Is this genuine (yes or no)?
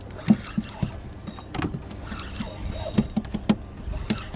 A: yes